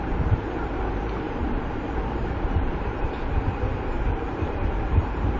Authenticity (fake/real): fake